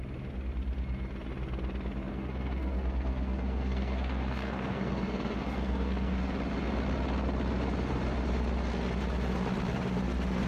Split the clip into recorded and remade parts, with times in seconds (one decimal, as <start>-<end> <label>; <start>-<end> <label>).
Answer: 0.0-2.1 recorded; 2.1-6.1 remade; 6.1-10.5 recorded